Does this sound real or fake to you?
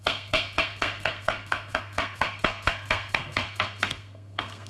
fake